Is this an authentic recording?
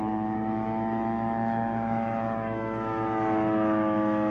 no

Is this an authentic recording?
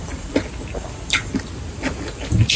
yes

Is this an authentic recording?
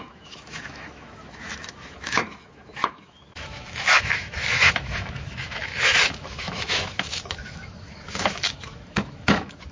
no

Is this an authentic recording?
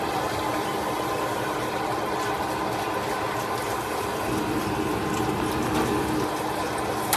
yes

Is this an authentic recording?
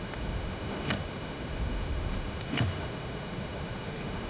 no